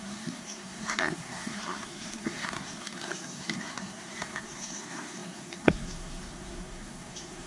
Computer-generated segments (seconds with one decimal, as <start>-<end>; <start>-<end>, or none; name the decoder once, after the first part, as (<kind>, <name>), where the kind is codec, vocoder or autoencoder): 0.0-7.5 (codec, SNAC)